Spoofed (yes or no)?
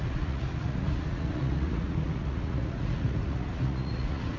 yes